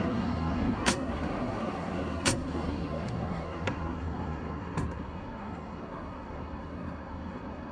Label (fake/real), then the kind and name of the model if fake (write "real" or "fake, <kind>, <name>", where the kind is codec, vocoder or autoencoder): fake, codec, SNAC